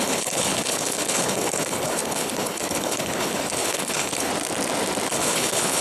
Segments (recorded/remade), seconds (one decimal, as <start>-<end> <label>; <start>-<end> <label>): 0.0-4.3 remade; 4.3-5.1 recorded; 5.1-5.8 remade